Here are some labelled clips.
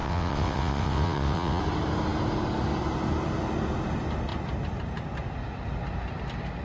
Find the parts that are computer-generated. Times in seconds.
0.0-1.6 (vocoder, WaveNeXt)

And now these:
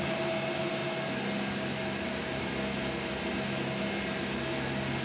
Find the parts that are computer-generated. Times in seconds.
none